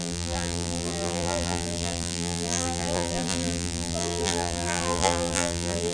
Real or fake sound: fake